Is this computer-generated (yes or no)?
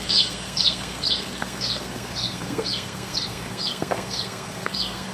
yes